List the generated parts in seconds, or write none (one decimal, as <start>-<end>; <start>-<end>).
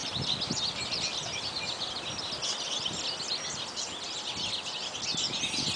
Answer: none